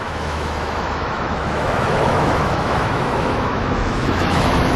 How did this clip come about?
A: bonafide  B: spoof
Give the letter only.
B